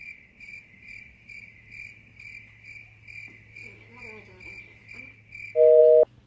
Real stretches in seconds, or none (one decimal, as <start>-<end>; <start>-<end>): 0.0-6.3